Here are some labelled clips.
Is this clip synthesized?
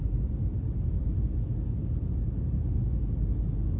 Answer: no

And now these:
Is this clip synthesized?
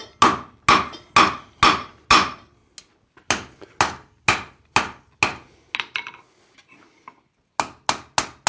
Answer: no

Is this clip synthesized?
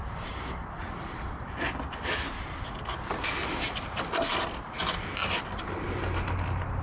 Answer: no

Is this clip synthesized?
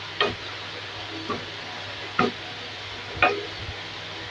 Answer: no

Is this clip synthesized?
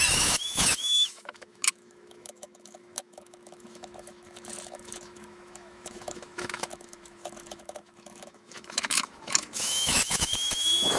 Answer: yes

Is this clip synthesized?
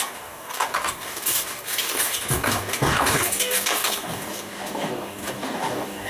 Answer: yes